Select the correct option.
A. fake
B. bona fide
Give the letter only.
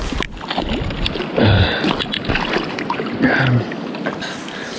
B